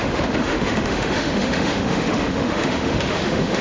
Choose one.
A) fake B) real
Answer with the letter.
A